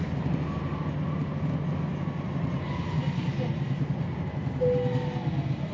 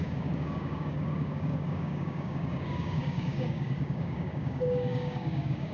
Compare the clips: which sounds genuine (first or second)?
first